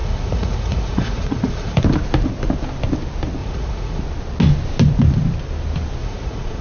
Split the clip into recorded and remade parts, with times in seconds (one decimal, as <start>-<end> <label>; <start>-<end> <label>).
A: 0.0-1.8 remade; 1.8-3.4 recorded; 3.4-4.0 remade; 4.0-6.0 recorded; 6.0-6.6 remade